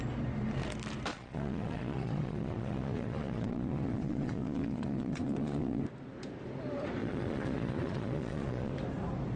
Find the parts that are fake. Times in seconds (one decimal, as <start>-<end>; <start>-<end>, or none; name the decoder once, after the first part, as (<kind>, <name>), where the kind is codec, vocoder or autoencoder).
1.1-5.8 (vocoder, Vocos); 7.0-8.7